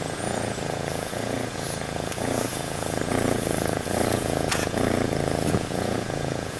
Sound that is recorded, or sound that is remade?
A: remade